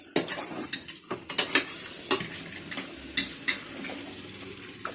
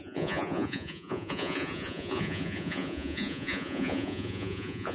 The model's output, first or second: second